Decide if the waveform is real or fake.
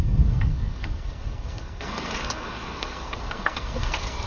fake